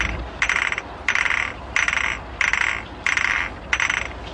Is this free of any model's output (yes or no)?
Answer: yes